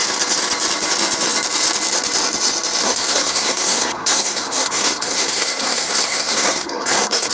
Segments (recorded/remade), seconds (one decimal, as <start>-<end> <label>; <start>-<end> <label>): 0.0-2.8 recorded; 2.8-7.3 remade